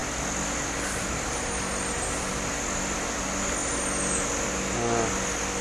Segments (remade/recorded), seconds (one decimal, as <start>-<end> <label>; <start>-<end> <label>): 0.0-5.6 recorded